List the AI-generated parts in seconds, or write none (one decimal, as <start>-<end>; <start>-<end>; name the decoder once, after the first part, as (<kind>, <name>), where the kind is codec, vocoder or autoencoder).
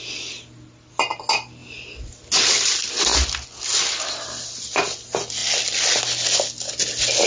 none